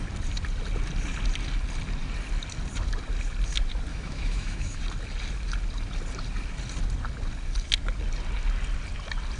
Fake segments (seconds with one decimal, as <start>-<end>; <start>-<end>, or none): 3.9-4.8